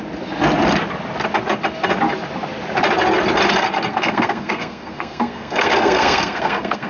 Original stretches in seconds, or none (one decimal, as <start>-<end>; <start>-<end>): 0.0-3.9

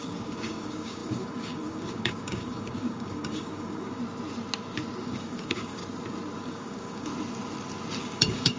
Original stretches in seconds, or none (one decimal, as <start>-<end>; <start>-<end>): 4.0-5.0; 5.8-6.5; 7.1-8.0

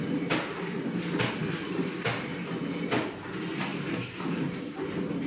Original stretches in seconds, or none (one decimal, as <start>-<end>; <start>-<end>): 0.0-5.3